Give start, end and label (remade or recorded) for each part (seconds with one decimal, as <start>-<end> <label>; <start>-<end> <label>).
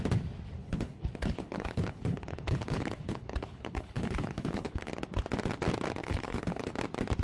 0.0-0.6 recorded; 0.6-4.9 remade; 4.9-6.0 recorded; 6.0-6.7 remade; 6.7-7.2 recorded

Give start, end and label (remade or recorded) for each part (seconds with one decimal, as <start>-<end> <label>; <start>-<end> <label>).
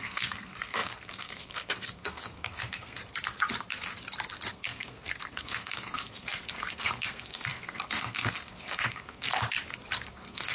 0.0-3.0 remade; 3.0-4.5 recorded; 4.5-9.3 remade; 9.3-10.1 recorded; 10.1-10.5 remade